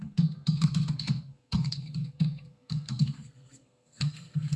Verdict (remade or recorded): remade